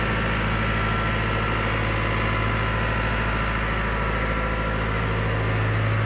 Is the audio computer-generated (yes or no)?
no